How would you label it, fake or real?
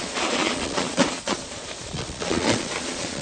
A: fake